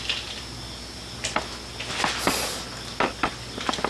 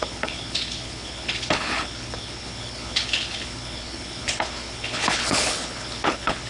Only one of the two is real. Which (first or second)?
first